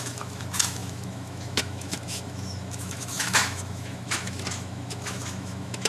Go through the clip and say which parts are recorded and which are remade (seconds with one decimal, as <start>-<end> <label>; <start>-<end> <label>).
0.0-5.9 remade